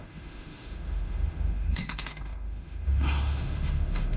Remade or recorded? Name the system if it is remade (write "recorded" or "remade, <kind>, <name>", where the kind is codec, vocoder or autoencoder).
remade, autoencoder, DAC-VAE